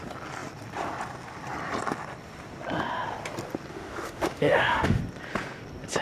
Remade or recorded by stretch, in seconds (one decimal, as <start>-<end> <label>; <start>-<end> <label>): 0.0-3.7 recorded; 3.7-5.0 remade; 5.0-6.0 recorded